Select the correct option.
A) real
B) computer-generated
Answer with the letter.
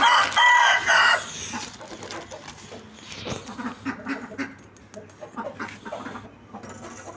A